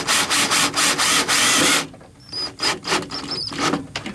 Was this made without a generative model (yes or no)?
yes